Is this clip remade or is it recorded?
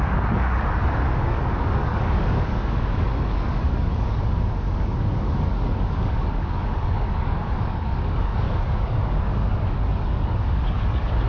remade